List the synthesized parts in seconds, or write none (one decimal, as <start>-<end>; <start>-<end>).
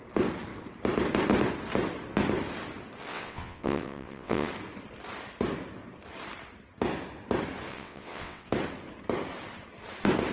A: 3.1-4.5; 7.7-8.5